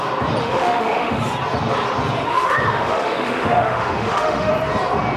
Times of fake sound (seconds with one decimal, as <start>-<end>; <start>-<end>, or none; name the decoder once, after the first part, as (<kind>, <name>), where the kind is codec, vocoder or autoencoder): 0.4-1.2 (autoencoder, DAC-VAE); 2.3-4.5